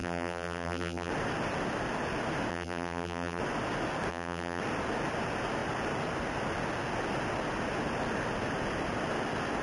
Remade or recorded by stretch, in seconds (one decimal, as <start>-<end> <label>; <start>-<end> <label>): 0.0-1.1 remade; 1.1-2.5 recorded; 2.5-3.4 remade; 3.4-4.1 recorded; 4.1-4.6 remade; 4.6-9.6 recorded